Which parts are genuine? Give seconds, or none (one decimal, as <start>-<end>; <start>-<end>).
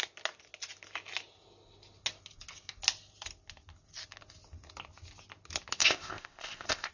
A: 0.0-5.8